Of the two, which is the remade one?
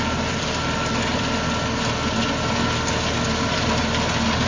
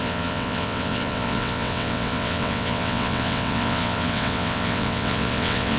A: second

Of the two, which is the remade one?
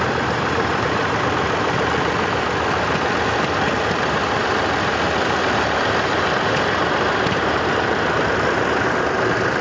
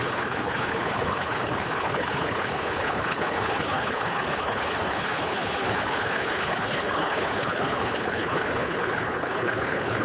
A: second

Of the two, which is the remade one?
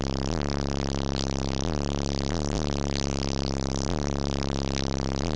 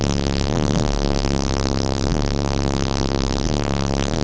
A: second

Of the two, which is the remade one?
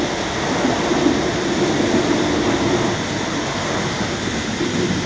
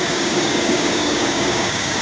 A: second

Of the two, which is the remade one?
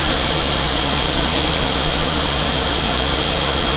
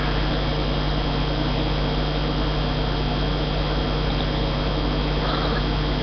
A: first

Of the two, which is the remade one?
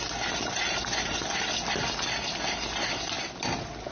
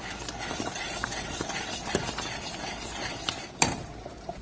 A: second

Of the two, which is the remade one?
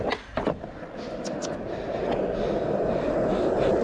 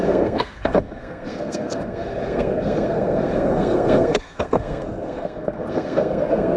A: second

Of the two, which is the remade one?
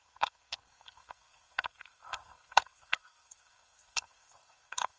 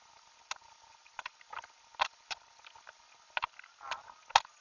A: first